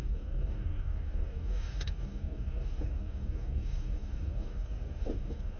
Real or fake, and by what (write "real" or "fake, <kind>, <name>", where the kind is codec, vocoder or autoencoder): fake, codec, DAC